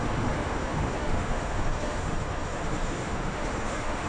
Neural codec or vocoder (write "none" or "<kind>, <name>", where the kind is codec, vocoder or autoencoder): autoencoder, DAC-VAE